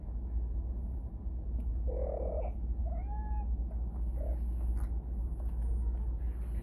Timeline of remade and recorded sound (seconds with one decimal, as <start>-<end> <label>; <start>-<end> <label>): 0.0-6.6 recorded